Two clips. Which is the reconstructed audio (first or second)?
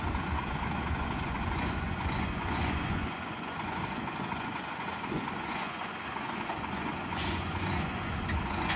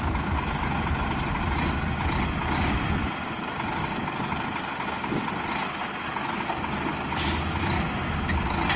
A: first